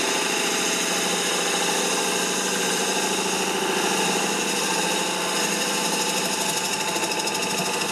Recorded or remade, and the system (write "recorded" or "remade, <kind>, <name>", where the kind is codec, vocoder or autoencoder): recorded